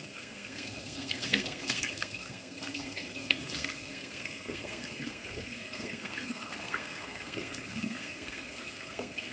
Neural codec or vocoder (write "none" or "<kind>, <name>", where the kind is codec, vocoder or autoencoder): codec, SNAC